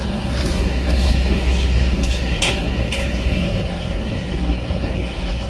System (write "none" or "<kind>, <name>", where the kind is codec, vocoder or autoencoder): codec, SNAC